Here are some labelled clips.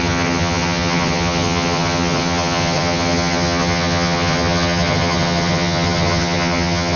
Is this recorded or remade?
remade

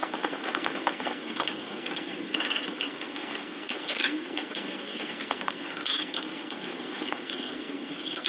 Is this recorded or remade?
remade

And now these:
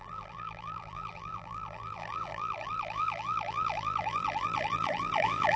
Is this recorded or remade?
remade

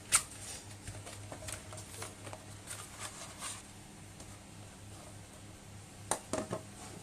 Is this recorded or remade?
recorded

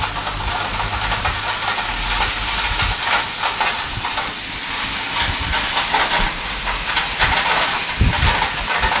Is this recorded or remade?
recorded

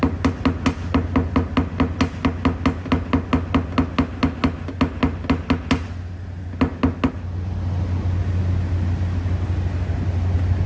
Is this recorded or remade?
recorded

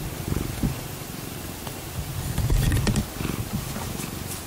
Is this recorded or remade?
recorded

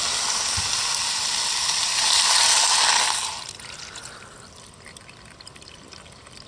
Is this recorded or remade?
recorded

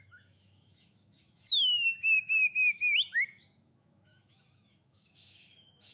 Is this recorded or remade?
remade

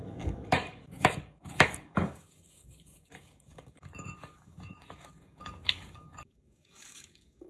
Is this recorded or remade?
remade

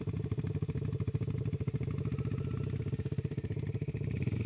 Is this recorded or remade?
recorded